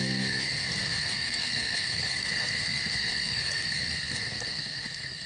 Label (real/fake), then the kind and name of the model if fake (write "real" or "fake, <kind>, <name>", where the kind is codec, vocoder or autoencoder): fake, codec, SNAC